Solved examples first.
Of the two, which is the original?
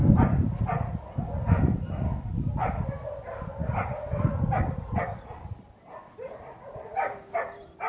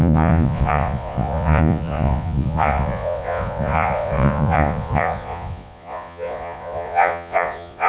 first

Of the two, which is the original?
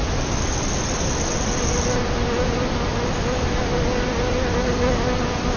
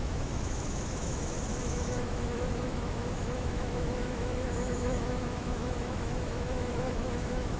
first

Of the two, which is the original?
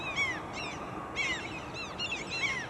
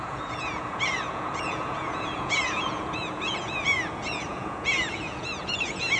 first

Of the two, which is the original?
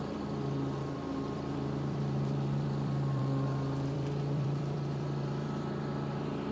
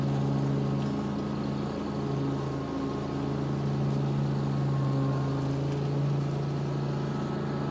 second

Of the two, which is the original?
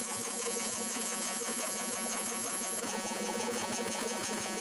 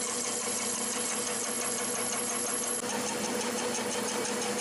second